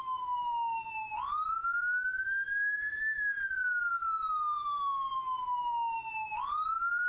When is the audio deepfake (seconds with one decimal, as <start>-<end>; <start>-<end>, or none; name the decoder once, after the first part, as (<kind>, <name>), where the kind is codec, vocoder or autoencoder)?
none